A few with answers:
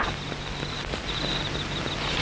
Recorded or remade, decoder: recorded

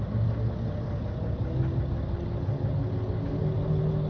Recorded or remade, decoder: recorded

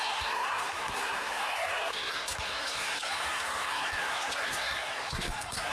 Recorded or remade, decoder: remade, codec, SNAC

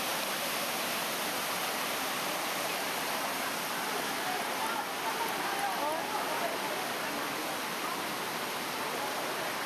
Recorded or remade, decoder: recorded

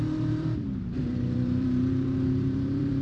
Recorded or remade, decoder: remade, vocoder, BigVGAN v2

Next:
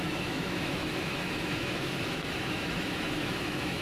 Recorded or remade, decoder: remade, autoencoder, DAC-VAE